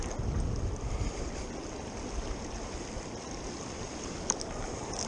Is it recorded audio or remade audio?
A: recorded